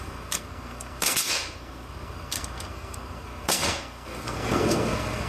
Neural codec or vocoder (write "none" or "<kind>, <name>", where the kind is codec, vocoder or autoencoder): codec, SNAC